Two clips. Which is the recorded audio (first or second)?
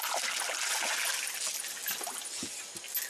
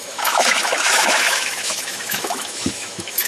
first